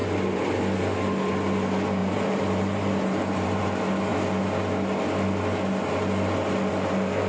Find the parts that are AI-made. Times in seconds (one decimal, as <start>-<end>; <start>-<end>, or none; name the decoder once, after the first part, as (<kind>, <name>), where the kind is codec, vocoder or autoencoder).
2.0-3.6 (vocoder, BigVGAN v2)